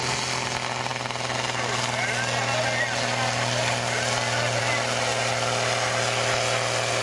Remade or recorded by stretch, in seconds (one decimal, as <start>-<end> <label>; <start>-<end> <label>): 0.0-7.0 recorded